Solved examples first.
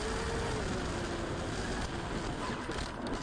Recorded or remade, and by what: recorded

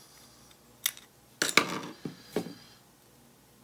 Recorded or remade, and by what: recorded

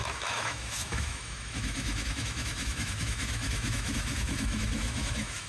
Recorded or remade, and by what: remade, autoencoder, DAC-VAE